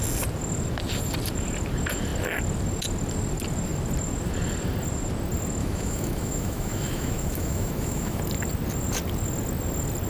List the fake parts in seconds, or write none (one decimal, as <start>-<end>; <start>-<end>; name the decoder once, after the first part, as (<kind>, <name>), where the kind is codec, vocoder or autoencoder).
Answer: 5.6-8.2 (autoencoder, DAC-VAE)